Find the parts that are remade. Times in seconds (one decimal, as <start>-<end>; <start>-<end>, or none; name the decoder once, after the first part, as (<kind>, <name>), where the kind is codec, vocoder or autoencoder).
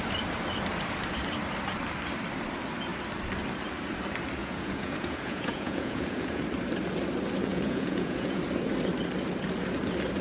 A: 4.4-6.4 (vocoder, Vocos); 7.5-8.4